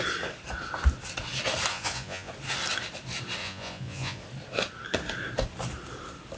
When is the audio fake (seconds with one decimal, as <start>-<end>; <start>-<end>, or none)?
1.7-2.3; 3.4-4.2